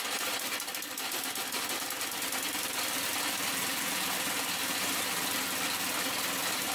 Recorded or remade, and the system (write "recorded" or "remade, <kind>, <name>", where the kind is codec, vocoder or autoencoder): recorded